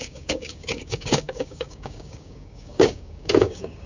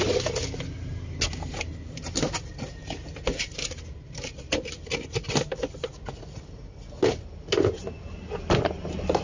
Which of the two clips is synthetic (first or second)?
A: first